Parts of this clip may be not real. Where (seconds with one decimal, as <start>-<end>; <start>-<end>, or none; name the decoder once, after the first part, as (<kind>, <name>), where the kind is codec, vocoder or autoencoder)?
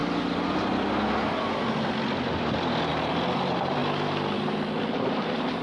2.9-3.8 (vocoder, BigVGAN v2); 4.9-5.6